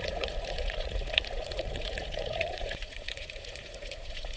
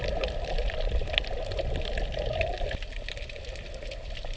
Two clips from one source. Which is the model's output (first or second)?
first